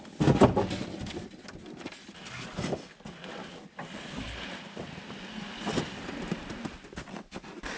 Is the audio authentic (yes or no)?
yes